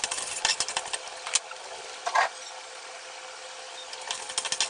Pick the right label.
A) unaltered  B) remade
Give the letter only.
A